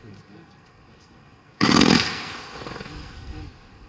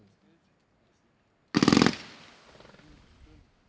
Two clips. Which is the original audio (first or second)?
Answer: second